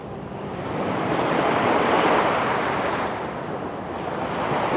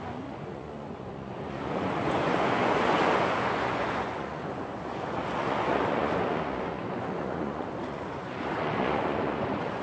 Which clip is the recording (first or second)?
first